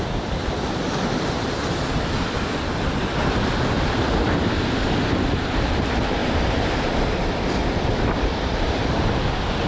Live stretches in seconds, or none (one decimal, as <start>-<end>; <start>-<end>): none